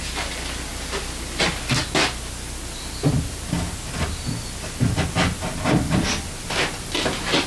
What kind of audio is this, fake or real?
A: real